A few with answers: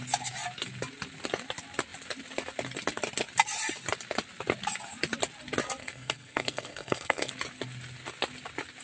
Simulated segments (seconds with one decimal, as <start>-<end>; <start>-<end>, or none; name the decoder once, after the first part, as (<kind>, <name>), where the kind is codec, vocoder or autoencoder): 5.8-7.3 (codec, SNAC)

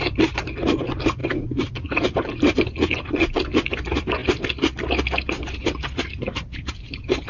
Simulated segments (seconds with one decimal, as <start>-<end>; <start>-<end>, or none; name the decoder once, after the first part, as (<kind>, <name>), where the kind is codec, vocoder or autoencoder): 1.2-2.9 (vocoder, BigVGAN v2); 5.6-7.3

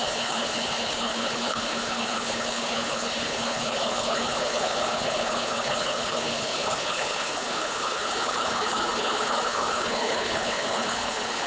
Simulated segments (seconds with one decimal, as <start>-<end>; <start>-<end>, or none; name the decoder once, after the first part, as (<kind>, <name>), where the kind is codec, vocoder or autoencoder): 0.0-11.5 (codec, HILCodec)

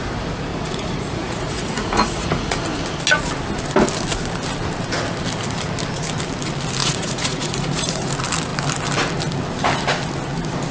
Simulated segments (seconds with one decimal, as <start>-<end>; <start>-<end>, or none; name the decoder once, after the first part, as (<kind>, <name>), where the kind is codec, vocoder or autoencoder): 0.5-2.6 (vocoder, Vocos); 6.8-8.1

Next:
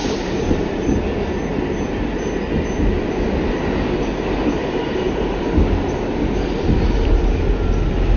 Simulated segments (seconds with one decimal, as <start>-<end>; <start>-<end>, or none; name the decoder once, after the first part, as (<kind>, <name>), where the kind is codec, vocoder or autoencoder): 0.0-1.0 (vocoder, BigVGAN v2); 4.6-7.1

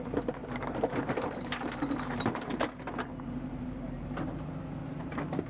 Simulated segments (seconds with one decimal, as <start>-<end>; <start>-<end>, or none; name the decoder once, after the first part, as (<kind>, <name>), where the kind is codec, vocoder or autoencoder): 0.0-5.5 (vocoder, BigVGAN v2)

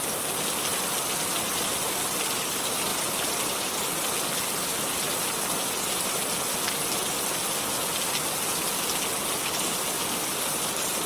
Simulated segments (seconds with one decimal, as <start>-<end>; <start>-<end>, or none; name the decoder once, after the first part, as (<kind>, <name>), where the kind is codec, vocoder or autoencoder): none